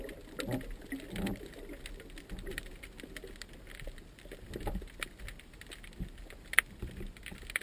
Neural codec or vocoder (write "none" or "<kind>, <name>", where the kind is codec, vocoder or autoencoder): none